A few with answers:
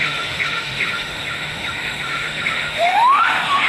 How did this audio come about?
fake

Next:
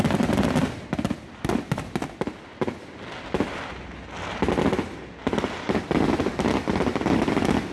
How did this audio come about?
real